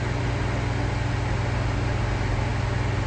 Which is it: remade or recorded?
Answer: recorded